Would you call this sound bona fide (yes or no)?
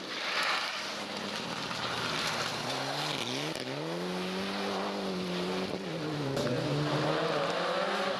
yes